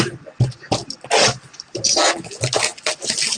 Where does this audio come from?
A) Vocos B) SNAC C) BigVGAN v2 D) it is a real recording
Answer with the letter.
D